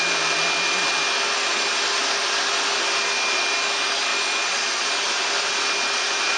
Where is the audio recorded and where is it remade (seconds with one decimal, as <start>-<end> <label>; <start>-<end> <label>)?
0.0-6.4 recorded